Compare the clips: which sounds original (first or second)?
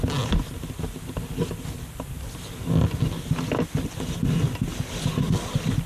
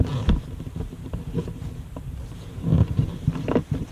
first